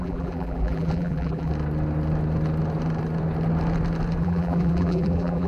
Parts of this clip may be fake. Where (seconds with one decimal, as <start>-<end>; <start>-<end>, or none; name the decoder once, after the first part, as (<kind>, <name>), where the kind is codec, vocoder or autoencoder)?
0.0-1.5 (vocoder, BigVGAN v2); 4.2-5.5

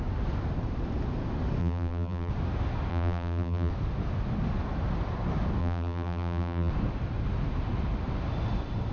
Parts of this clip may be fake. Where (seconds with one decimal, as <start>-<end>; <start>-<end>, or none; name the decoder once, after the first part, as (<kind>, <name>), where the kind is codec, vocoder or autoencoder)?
1.6-2.3 (vocoder, BigVGAN v2); 2.9-3.7; 5.6-6.7

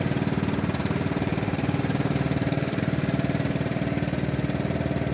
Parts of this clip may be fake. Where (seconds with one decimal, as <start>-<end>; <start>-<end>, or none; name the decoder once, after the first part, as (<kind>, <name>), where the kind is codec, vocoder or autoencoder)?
0.8-2.8 (vocoder, BigVGAN v2)

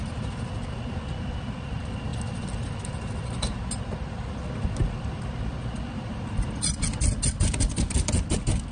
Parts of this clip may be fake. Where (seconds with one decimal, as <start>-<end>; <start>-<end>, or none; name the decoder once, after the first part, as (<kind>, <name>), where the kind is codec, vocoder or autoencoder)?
none